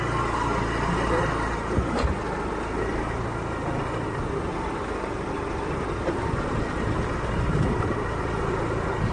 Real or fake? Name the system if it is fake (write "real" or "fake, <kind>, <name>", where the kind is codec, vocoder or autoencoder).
real